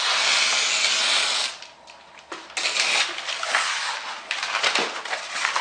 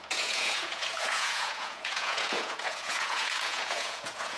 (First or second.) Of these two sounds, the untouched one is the first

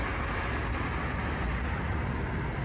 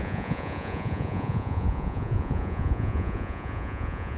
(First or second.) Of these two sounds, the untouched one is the first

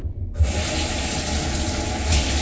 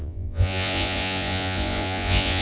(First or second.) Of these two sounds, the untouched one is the first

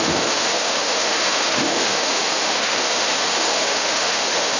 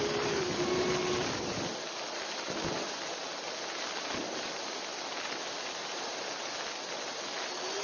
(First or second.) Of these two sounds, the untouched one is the second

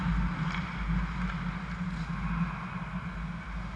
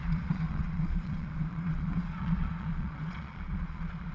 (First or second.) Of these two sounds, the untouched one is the first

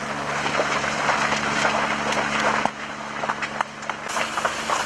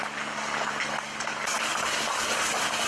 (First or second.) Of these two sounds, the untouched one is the first